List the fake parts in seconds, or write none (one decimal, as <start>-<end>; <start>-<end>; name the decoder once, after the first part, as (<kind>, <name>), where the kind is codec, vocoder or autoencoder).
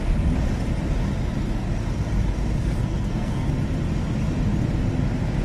2.8-3.5 (codec, SNAC)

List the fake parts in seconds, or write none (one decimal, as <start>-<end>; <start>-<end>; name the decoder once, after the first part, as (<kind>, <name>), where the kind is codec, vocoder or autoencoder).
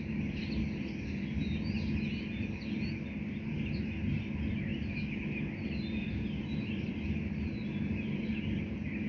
none